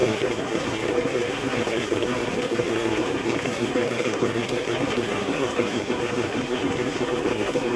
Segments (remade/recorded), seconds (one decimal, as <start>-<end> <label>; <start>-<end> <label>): 0.0-7.8 remade